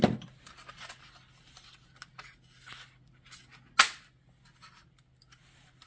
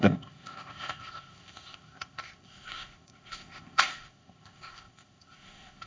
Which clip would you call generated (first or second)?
second